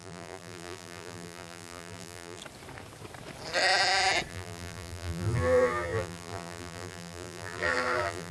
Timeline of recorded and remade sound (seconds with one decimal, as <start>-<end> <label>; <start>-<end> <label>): 0.0-2.4 remade; 2.4-4.3 recorded; 4.3-8.3 remade